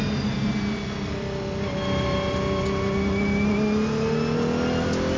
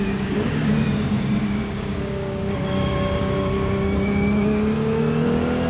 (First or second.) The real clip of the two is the first